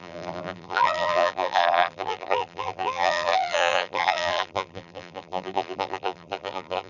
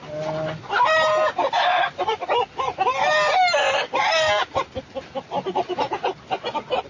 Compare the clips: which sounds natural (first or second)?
second